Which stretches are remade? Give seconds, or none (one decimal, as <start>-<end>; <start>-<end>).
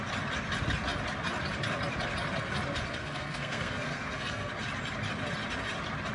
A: 3.0-4.5